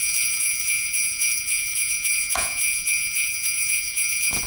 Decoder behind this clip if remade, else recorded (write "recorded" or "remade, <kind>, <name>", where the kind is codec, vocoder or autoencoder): remade, vocoder, Vocos